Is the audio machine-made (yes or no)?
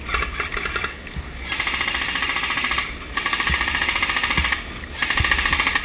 no